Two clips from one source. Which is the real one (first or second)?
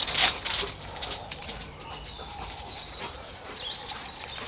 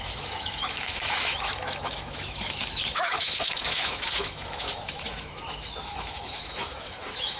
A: first